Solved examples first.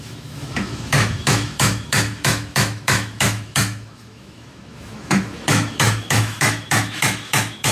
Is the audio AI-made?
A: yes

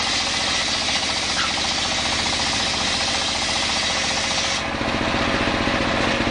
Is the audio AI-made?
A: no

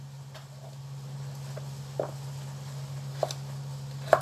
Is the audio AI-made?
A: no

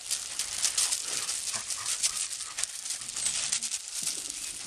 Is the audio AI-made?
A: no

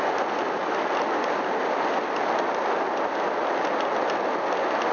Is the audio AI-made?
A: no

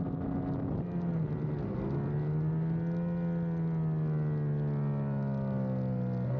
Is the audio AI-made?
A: no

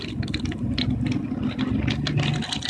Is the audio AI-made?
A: no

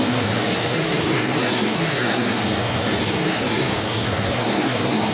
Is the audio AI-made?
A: yes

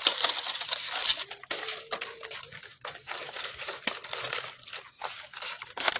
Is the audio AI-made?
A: no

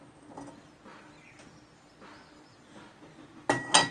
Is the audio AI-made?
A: no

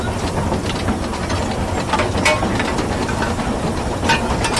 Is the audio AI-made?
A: no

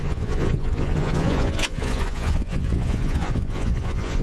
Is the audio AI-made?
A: yes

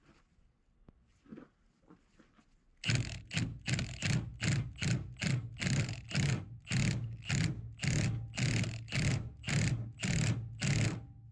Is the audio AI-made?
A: no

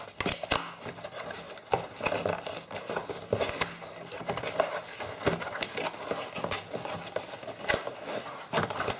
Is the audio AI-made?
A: no